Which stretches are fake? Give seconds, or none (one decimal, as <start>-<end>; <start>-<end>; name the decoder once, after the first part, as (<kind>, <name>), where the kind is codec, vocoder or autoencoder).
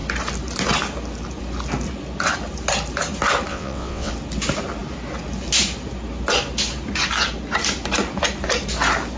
3.5-4.1 (vocoder, WaveNeXt)